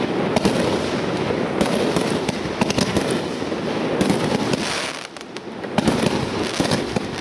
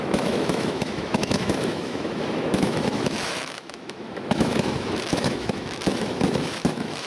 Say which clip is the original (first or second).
first